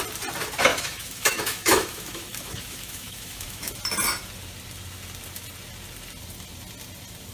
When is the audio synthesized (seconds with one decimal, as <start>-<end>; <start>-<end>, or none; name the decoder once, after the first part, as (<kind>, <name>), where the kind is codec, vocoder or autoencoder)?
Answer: 0.7-3.7 (autoencoder, DAC-VAE)